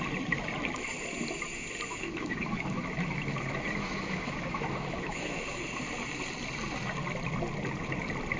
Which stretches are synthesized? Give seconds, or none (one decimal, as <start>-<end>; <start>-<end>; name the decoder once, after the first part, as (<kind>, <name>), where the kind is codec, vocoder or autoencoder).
1.9-5.6 (autoencoder, DAC-VAE)